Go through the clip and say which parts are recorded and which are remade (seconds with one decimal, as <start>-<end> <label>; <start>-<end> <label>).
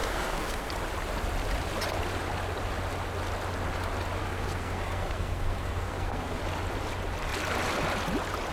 0.0-0.7 remade; 0.7-4.2 recorded; 4.2-6.4 remade; 6.4-8.5 recorded